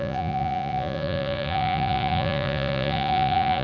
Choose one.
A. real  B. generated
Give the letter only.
B